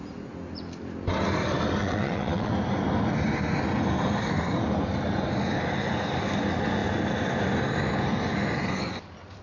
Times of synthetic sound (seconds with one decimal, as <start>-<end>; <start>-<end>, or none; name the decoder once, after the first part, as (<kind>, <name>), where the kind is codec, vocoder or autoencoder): 1.8-2.5 (vocoder, WaveNeXt)